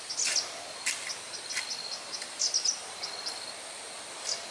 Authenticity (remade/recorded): recorded